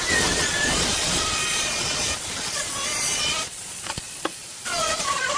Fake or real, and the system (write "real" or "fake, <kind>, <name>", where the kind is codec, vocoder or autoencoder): fake, vocoder, Vocos